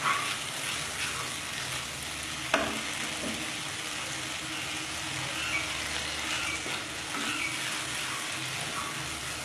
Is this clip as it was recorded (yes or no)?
yes